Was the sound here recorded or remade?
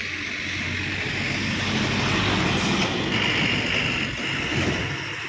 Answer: recorded